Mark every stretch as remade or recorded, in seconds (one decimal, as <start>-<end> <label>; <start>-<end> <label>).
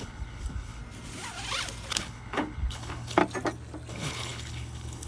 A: 0.0-0.8 remade; 0.8-1.9 recorded; 1.9-3.2 remade; 3.2-3.9 recorded; 3.9-5.1 remade